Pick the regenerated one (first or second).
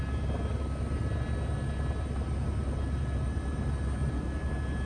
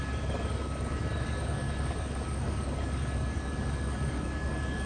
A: second